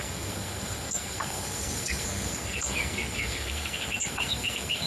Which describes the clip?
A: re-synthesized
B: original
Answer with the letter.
A